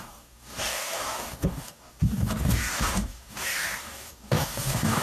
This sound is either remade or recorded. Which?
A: remade